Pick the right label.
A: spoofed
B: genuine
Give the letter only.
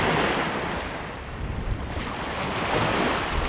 B